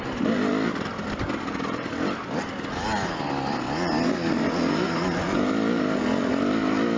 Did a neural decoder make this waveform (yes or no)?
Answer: no